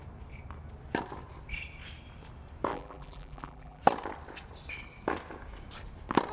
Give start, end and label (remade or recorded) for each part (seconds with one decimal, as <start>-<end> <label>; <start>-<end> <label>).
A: 0.0-2.7 recorded; 2.7-3.8 remade; 3.8-6.3 recorded